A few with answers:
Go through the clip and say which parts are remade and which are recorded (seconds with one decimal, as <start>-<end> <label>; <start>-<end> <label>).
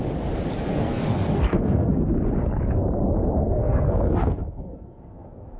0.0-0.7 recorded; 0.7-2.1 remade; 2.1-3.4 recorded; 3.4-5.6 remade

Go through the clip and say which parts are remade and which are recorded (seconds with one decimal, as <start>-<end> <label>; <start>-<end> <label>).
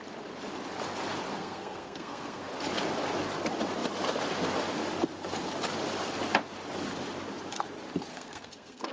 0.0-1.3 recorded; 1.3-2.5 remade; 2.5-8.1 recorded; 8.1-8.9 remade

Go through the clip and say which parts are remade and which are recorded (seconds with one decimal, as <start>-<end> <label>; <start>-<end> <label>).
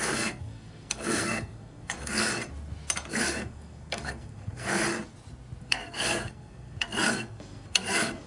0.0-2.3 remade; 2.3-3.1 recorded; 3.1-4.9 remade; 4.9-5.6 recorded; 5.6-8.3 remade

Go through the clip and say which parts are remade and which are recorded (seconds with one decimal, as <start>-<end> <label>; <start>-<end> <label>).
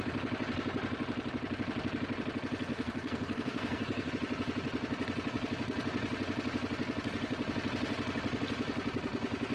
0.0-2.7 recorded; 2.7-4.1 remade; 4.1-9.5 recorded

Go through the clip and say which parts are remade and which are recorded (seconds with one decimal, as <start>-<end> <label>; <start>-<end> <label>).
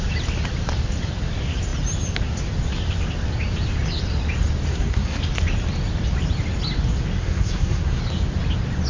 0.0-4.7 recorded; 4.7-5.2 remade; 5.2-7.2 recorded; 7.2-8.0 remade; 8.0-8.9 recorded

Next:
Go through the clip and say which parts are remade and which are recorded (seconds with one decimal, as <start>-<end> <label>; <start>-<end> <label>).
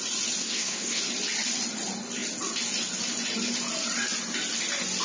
0.0-0.4 recorded; 0.4-1.0 remade; 1.0-5.0 recorded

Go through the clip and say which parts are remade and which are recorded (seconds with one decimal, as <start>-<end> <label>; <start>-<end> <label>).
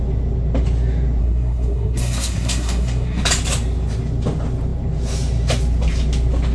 0.0-1.2 recorded; 1.2-3.2 remade; 3.2-6.5 recorded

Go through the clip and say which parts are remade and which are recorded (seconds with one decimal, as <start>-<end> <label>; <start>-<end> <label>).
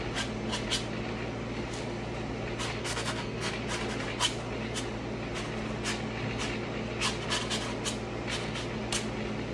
0.0-2.8 recorded; 2.8-3.5 remade; 3.5-9.5 recorded